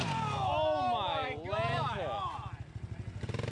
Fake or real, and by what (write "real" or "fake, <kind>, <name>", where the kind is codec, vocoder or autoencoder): real